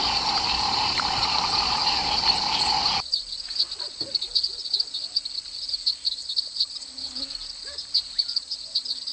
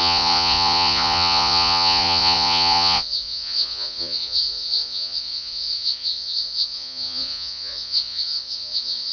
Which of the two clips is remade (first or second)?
second